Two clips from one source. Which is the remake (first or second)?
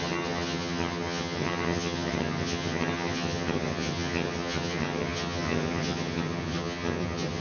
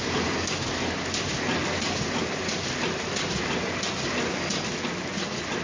first